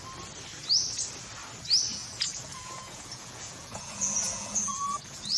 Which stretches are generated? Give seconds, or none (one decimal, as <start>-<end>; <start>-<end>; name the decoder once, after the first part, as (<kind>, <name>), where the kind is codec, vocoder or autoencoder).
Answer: 2.0-5.4 (vocoder, Vocos)